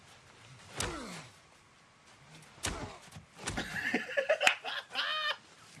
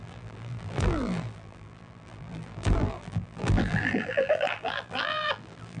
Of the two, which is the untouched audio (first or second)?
first